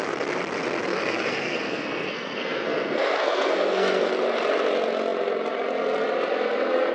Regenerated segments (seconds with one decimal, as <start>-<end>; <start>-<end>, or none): 0.9-4.1